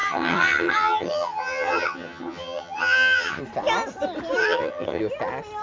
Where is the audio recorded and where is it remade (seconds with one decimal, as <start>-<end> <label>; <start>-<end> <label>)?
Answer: 0.0-3.4 remade; 3.4-4.4 recorded; 4.4-5.0 remade; 5.0-5.6 recorded

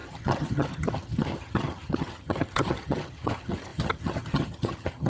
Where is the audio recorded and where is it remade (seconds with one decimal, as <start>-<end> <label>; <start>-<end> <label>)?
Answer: 0.0-5.1 remade

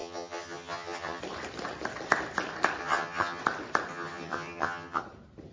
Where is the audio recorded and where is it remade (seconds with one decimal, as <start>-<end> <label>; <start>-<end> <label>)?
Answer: 0.0-1.2 remade; 1.2-2.8 recorded; 2.8-3.4 remade; 3.4-3.9 recorded; 3.9-5.0 remade; 5.0-5.5 recorded

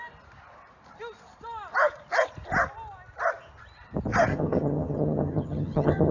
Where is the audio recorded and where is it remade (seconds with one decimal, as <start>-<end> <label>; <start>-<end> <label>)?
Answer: 0.0-4.3 recorded; 4.3-6.1 remade

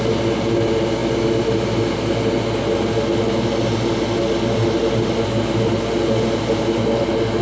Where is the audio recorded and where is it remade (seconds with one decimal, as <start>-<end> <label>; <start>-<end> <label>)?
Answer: 0.0-7.4 recorded

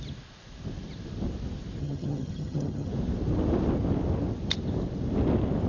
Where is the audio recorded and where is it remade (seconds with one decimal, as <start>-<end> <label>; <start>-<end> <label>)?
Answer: 0.0-1.8 recorded; 1.8-2.9 remade; 2.9-5.7 recorded

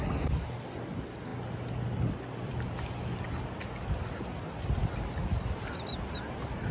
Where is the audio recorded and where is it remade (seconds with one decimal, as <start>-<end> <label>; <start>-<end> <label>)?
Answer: 0.0-6.7 recorded